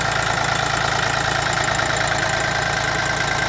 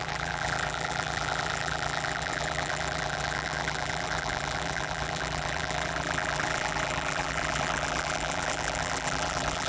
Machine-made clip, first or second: second